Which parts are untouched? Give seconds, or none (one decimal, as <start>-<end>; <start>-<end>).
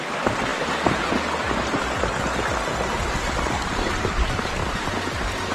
0.0-5.5